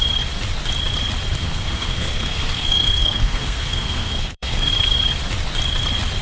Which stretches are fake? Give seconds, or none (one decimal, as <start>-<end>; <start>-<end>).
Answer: 1.4-4.7